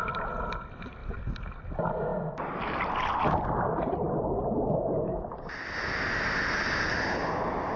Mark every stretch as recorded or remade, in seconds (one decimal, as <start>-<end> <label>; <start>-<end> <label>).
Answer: 0.0-7.8 recorded